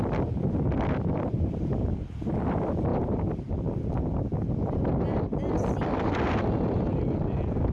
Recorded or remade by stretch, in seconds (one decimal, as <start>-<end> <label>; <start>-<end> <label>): 0.0-7.7 recorded